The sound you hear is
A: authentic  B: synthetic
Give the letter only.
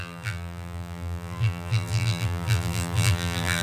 B